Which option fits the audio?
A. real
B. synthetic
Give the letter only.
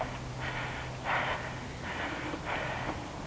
A